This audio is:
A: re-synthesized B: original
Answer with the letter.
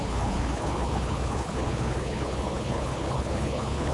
A